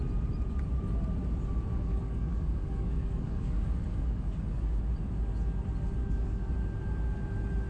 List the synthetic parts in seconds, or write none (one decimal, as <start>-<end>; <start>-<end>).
1.7-4.8; 6.0-6.5